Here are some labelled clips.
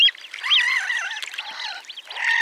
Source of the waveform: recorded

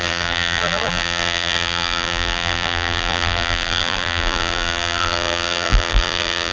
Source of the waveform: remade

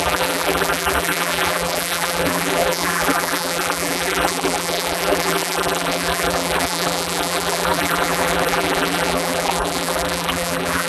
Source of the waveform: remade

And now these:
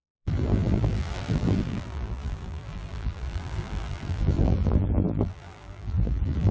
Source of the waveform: remade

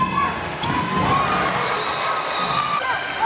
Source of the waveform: recorded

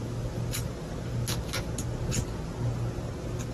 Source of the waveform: recorded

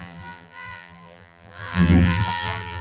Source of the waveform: remade